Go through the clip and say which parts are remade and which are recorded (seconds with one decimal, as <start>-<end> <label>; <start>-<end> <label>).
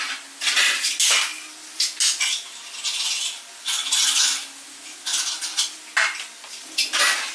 0.0-7.3 recorded